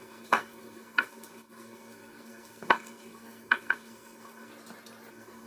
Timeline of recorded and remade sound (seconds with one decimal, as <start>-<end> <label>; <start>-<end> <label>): 0.0-4.5 remade; 4.5-5.1 recorded; 5.1-5.5 remade